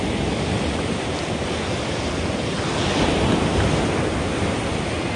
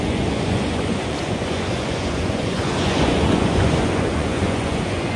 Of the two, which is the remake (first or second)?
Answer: second